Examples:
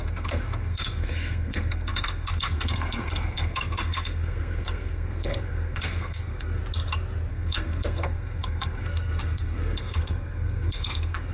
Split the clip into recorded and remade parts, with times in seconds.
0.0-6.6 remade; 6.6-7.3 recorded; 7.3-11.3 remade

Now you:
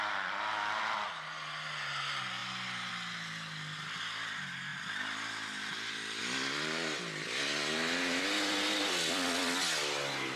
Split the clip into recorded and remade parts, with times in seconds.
0.0-10.4 recorded

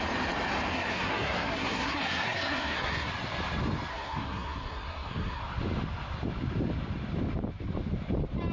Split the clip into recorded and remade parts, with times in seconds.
0.0-0.7 recorded; 0.7-3.1 remade; 3.1-3.9 recorded; 3.9-5.4 remade; 5.4-8.5 recorded